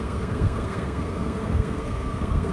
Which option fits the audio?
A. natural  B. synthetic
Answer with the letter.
B